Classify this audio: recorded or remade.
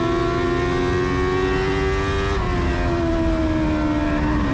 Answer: recorded